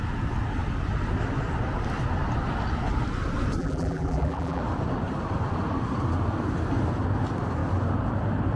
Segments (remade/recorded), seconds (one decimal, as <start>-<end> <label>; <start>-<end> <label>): 0.0-3.6 recorded; 3.6-4.6 remade; 4.6-8.6 recorded